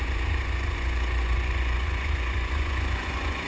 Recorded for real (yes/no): no